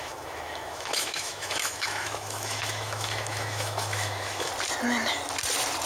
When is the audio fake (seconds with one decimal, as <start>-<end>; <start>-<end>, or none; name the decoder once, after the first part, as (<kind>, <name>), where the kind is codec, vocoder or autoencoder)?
0.0-4.5 (autoencoder, DAC-VAE)